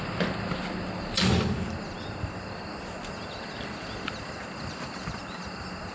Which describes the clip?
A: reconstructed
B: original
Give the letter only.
B